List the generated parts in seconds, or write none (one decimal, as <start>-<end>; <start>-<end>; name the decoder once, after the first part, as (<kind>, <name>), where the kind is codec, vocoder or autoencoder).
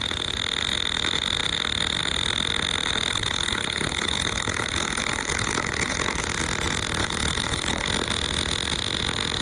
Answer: 3.1-6.2 (codec, HILCodec); 7.0-7.9